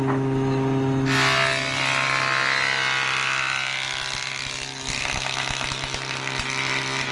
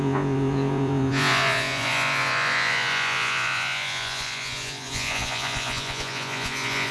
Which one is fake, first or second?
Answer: second